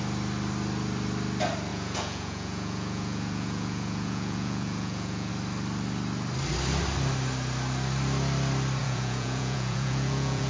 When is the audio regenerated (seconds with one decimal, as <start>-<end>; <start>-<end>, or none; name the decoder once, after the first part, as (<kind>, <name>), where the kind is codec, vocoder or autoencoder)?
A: 1.7-5.3 (vocoder, Vocos); 8.8-10.5